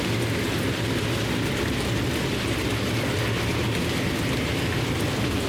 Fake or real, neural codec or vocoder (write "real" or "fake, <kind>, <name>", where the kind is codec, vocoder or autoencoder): real